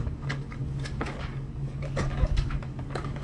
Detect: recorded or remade remade